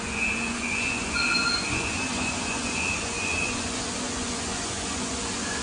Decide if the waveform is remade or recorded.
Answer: remade